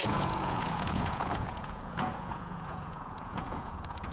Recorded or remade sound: remade